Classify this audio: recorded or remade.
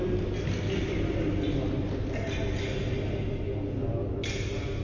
recorded